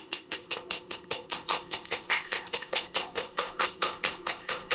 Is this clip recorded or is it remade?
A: remade